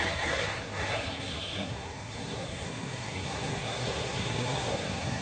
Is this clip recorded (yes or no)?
no